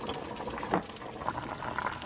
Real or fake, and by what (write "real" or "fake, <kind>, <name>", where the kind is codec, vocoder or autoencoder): real